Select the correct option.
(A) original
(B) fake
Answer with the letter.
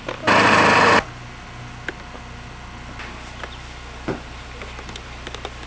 A